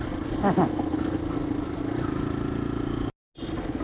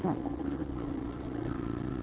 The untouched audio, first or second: first